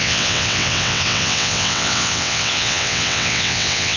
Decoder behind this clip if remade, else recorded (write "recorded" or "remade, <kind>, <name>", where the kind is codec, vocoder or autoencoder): remade, vocoder, WaveNeXt